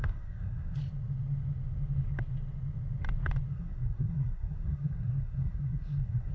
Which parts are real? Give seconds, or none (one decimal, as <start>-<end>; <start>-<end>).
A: 0.8-3.5

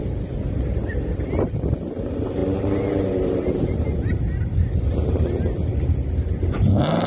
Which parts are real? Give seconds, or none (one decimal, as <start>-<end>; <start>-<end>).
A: 0.0-7.1

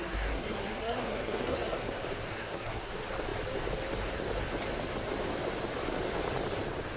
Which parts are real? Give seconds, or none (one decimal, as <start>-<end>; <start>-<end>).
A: 1.9-2.3; 2.9-7.0

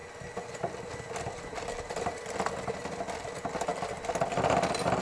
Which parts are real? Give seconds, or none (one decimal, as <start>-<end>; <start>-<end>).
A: 0.0-5.0

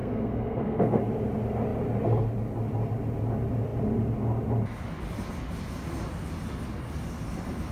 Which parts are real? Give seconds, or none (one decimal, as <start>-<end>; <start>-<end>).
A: 1.0-7.7

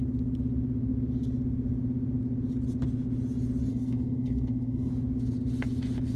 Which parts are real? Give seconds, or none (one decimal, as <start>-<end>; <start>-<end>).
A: 0.0-3.7; 4.9-6.2